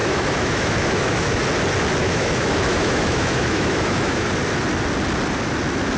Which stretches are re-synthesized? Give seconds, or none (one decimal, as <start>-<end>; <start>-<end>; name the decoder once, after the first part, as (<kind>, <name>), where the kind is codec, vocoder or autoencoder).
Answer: 0.0-1.4 (autoencoder, DAC-VAE); 2.0-4.3